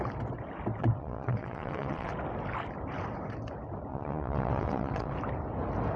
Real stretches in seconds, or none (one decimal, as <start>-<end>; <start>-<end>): 0.0-0.8; 2.1-3.9; 5.1-6.0